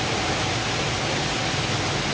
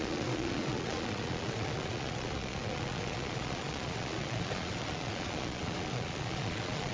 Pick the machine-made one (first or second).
second